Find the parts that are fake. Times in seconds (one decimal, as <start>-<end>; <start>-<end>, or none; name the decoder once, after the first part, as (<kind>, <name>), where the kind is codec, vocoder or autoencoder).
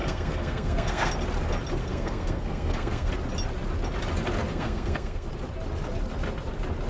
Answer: 0.0-1.1 (codec, SNAC); 1.8-3.1; 4.5-5.3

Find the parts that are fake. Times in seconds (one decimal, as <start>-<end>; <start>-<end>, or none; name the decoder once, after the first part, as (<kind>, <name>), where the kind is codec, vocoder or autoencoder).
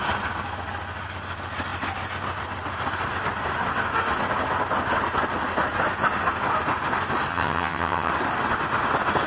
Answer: 7.3-8.1 (vocoder, HiFi-GAN)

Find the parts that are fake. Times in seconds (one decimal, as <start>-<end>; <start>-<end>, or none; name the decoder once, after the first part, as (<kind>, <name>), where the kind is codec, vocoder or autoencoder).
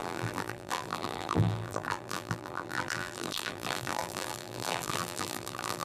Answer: 0.0-5.8 (vocoder, BigVGAN v2)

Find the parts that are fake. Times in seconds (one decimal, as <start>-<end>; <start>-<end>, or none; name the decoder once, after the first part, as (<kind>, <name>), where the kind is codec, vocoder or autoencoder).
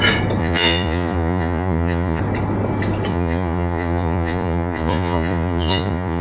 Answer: 0.4-2.2 (vocoder, Vocos); 3.1-6.2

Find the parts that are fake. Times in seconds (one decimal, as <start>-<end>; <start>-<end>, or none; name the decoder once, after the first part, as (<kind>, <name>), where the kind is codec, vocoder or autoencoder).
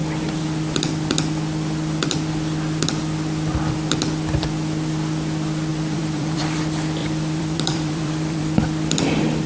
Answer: 5.7-6.6 (vocoder, BigVGAN v2); 7.0-8.4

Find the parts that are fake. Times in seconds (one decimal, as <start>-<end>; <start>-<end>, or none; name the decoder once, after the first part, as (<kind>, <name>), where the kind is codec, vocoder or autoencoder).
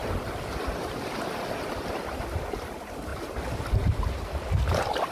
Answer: 2.5-5.1 (vocoder, BigVGAN v2)